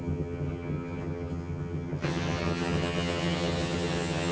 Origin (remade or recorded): remade